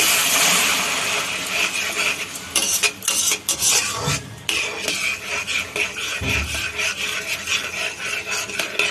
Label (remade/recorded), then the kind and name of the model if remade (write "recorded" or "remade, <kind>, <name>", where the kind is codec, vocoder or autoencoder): recorded